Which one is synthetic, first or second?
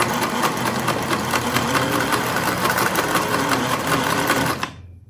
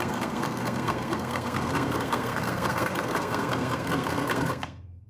second